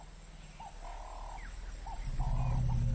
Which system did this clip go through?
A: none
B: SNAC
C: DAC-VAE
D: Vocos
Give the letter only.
A